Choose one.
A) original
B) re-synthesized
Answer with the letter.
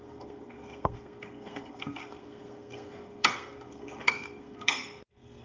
B